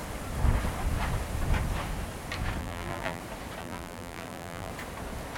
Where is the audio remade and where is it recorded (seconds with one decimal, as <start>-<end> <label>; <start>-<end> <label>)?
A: 0.0-2.6 recorded; 2.6-3.2 remade; 3.2-3.6 recorded; 3.6-4.7 remade; 4.7-5.4 recorded

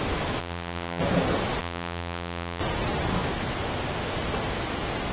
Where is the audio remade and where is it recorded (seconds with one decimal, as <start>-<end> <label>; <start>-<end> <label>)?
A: 0.0-0.4 recorded; 0.4-1.0 remade; 1.0-1.6 recorded; 1.6-2.6 remade; 2.6-5.1 recorded

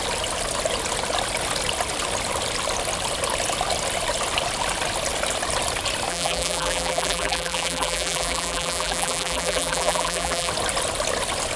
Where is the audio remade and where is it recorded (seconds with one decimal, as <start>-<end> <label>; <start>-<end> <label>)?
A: 0.0-6.1 recorded; 6.1-10.5 remade; 10.5-11.6 recorded

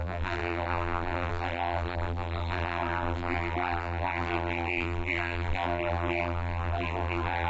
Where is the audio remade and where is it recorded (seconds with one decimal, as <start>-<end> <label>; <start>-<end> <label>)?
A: 0.0-7.5 remade

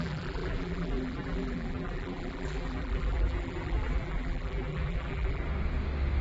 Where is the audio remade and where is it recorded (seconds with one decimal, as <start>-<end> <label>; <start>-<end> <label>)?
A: 0.0-5.4 remade; 5.4-6.2 recorded

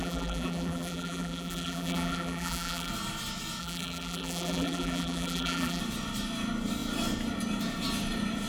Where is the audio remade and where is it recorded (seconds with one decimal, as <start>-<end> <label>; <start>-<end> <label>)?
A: 0.0-2.9 remade; 2.9-3.6 recorded; 3.6-5.8 remade; 5.8-8.5 recorded